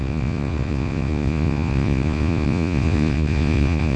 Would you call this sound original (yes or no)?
no